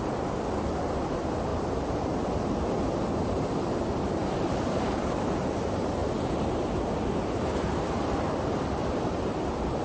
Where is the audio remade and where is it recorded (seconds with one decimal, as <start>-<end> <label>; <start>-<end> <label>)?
0.0-1.5 recorded; 1.5-2.2 remade; 2.2-4.2 recorded; 4.2-5.2 remade; 5.2-9.8 recorded